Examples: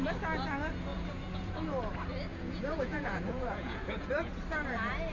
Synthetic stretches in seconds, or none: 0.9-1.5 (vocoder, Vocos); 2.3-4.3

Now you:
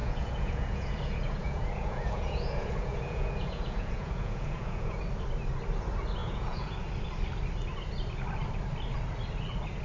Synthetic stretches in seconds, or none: 0.0-5.0 (vocoder, Vocos); 6.2-6.7

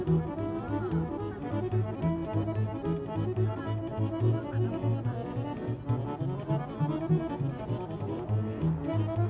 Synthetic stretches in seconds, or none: none

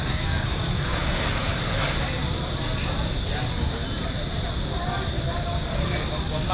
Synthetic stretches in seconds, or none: 0.0-1.5 (codec, DAC); 5.4-6.5

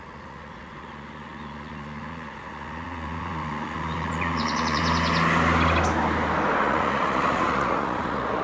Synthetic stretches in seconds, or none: 0.0-4.8 (vocoder, Vocos); 6.6-8.4